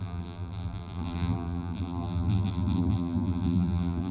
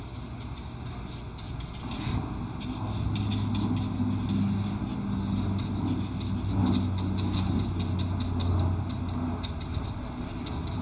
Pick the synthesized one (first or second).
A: first